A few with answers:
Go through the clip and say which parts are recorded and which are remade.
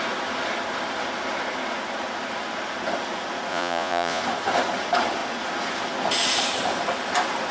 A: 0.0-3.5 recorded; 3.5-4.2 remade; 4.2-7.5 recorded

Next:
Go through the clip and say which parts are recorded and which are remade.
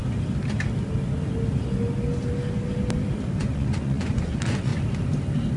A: 0.0-3.4 recorded; 3.4-4.7 remade; 4.7-5.6 recorded